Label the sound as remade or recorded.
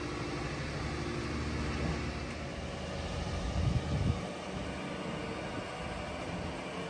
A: recorded